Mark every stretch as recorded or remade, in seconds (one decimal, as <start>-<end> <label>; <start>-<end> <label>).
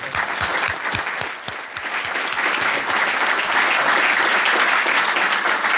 0.0-5.8 recorded